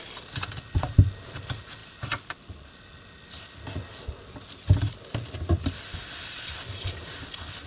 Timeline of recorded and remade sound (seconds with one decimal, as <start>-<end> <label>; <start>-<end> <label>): 0.0-7.7 recorded